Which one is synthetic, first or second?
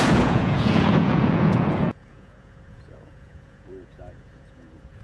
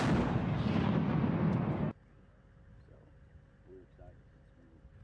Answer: first